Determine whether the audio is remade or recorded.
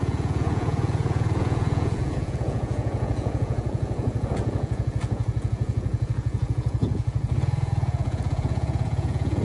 remade